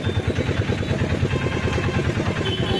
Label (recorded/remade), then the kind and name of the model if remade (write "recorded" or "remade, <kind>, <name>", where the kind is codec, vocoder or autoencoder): recorded